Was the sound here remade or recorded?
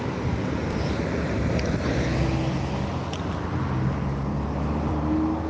recorded